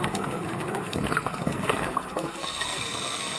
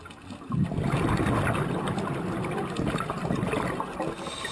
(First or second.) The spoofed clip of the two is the first